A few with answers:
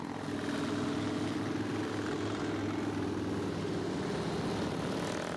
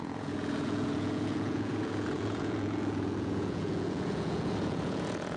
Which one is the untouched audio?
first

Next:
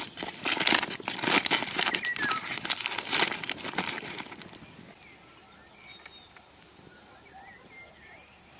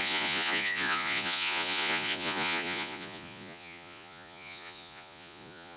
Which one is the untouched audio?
first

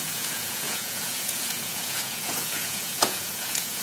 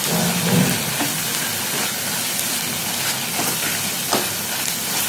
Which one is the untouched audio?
second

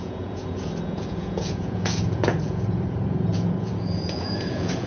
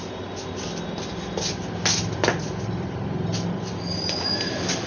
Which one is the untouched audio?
second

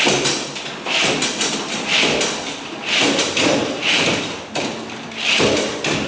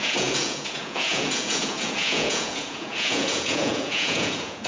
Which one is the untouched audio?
first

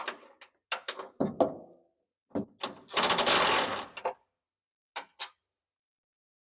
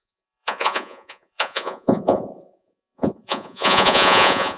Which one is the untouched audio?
first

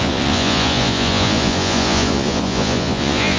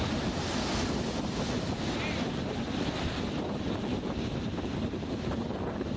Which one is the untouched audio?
second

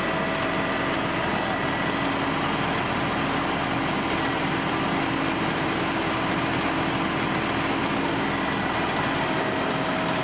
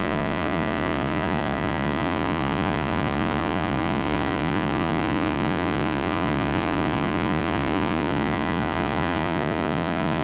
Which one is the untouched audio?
first